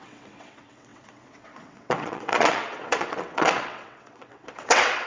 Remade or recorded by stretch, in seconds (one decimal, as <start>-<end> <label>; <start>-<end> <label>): 0.0-5.1 remade